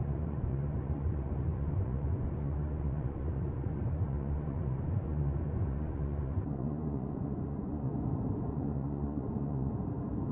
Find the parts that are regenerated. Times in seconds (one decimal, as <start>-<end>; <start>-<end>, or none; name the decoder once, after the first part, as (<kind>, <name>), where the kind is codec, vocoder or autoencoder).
0.0-7.9 (vocoder, Vocos); 8.5-9.8